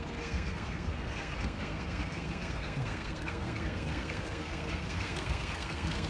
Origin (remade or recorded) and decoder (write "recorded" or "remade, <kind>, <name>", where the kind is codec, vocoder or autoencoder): remade, codec, SNAC